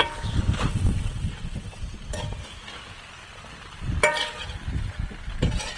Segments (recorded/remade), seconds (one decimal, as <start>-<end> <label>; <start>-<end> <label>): 0.0-0.7 recorded; 0.7-1.8 remade; 1.8-5.8 recorded